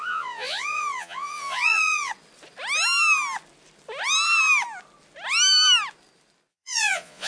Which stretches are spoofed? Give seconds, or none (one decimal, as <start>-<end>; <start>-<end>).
0.0-2.1; 6.5-7.3